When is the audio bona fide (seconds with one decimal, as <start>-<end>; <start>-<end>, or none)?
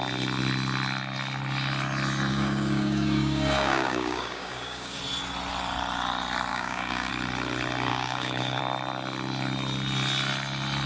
0.0-2.3; 5.0-6.5; 7.1-7.9; 8.6-10.9